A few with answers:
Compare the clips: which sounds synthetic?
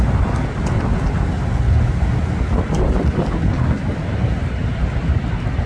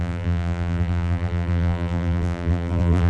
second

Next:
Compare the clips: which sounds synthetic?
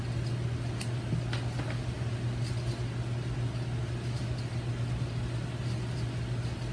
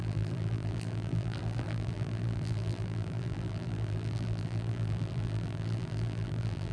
second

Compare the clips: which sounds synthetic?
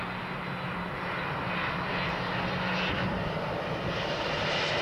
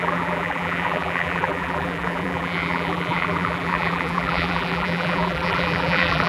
second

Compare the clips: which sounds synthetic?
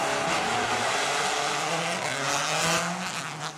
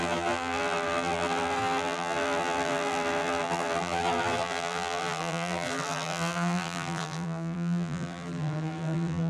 second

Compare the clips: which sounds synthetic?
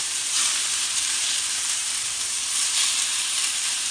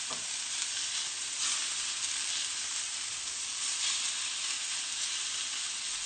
first